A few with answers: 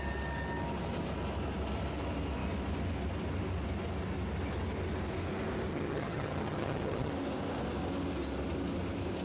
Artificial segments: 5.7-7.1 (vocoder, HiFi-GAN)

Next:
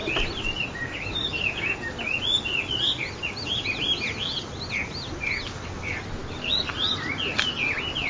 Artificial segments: none